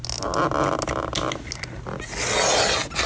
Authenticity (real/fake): real